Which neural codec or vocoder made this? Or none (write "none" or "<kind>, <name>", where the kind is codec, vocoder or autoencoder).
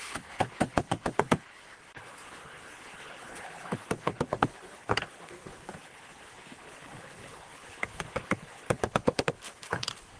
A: codec, HILCodec